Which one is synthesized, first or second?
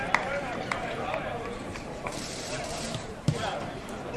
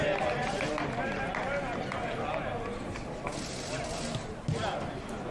first